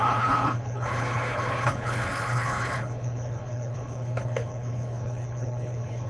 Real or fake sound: fake